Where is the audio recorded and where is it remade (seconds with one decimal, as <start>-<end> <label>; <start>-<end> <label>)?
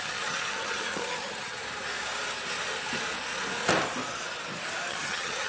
0.0-1.6 remade; 1.6-4.9 recorded; 4.9-5.5 remade